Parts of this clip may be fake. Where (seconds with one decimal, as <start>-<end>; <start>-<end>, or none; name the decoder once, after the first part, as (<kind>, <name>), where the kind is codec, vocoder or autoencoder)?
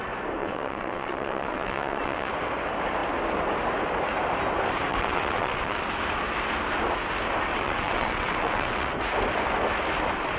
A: 0.4-2.3 (vocoder, WaveNeXt); 4.9-5.8; 7.5-8.9